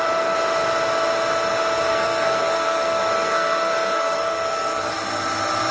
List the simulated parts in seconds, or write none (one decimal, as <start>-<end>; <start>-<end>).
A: 1.9-4.9